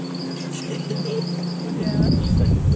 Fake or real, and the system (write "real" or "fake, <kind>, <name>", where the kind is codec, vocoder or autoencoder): real